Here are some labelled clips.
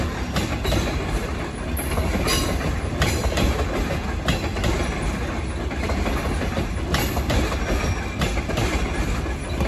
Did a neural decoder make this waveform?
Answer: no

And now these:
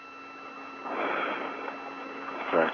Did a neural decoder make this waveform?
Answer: no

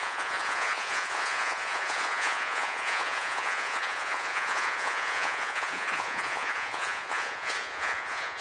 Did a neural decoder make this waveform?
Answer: yes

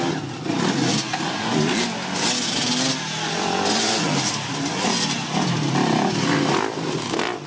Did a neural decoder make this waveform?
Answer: no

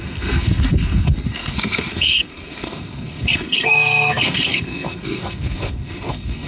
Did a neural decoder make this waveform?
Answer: yes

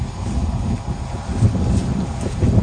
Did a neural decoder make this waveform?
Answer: no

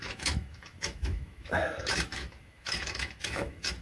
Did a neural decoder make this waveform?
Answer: yes